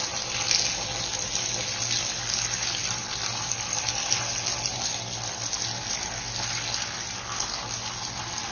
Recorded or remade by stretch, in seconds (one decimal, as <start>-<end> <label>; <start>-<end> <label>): 0.0-2.8 recorded; 2.8-4.4 remade; 4.4-8.5 recorded